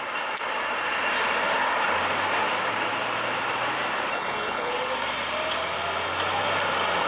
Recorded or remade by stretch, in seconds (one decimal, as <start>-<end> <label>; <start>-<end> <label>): 0.0-4.1 recorded; 4.1-4.7 remade; 4.7-7.1 recorded